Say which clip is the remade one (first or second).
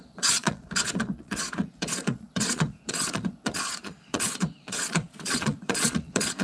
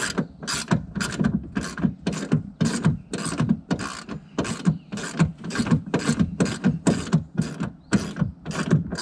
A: first